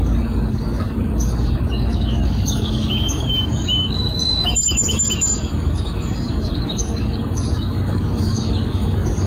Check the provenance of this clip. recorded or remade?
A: remade